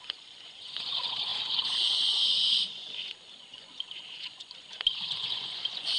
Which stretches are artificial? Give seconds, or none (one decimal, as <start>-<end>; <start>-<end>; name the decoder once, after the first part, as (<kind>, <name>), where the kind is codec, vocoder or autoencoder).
0.0-6.0 (vocoder, Vocos)